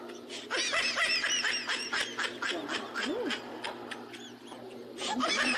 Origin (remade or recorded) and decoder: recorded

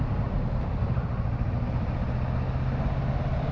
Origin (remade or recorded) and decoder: recorded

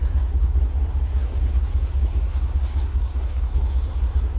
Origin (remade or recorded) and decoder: remade, codec, SNAC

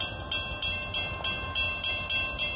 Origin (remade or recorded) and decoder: recorded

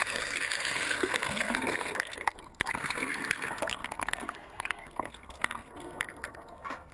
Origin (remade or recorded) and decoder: remade, codec, SNAC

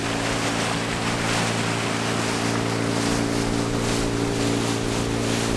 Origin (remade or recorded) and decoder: recorded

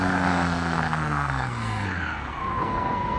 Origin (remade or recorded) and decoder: remade, codec, SNAC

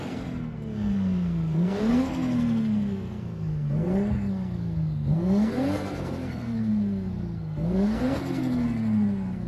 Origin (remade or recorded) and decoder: remade, codec, SNAC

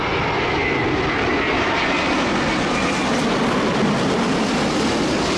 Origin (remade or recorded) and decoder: recorded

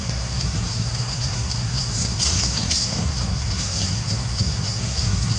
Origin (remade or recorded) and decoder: remade, codec, SNAC